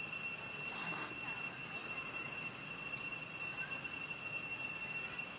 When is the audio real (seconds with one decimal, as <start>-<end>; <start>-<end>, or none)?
0.0-0.7; 1.2-5.4